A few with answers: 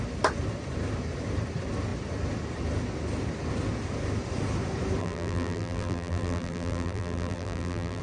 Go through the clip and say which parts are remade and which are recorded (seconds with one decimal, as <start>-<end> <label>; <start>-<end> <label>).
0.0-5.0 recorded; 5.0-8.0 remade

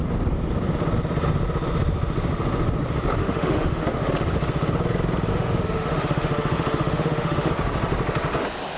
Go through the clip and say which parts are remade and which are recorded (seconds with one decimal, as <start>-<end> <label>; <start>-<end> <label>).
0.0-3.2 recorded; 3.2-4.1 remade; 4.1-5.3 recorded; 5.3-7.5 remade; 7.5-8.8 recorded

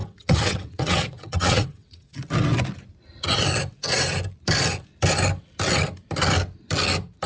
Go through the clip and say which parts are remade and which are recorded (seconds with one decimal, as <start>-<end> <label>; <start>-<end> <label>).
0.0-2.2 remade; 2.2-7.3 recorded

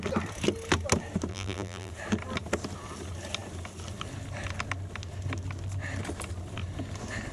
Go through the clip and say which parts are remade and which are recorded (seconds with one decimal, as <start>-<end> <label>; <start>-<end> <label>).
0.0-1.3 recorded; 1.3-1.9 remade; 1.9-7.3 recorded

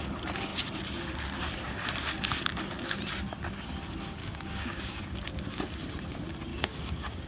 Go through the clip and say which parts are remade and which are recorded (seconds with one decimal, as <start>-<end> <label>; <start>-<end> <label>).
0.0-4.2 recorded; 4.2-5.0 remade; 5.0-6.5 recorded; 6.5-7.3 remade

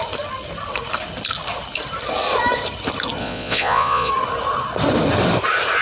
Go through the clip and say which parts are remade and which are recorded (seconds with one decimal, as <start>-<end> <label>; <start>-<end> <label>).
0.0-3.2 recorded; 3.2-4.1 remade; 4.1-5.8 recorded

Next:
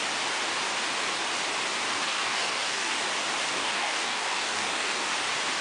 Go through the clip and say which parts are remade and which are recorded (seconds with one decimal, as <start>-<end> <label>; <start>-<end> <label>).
0.0-1.9 recorded; 1.9-3.0 remade; 3.0-3.5 recorded; 3.5-5.1 remade; 5.1-5.6 recorded